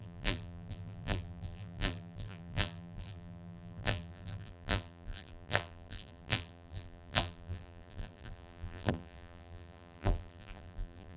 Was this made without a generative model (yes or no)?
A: no